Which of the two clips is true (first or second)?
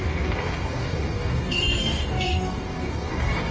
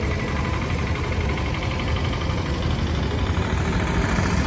second